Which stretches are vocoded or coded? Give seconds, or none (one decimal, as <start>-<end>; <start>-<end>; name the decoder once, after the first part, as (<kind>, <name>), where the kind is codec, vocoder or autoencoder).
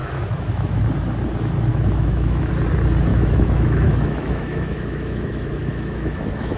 0.0-0.8 (autoencoder, DAC-VAE); 1.7-2.5; 3.1-6.6